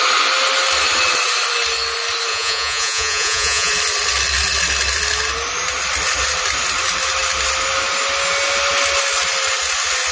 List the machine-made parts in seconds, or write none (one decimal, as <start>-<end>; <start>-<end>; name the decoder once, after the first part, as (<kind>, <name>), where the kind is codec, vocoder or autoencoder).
2.3-3.7 (vocoder, Vocos)